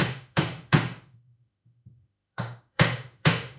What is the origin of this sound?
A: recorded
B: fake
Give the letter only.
B